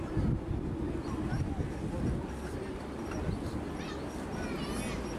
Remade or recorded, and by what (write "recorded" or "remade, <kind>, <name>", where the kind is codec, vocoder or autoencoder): recorded